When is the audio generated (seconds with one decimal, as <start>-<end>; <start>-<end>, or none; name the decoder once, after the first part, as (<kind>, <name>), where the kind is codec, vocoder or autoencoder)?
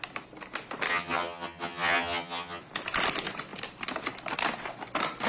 0.9-2.6 (vocoder, HiFi-GAN)